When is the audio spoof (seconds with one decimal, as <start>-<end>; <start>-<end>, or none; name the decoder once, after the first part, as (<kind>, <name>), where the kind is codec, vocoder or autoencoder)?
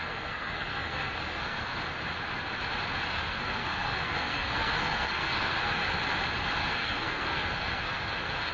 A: 0.0-1.7 (codec, SNAC); 3.1-5.8; 6.6-8.5